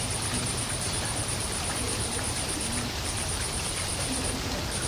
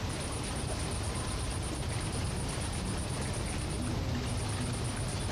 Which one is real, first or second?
second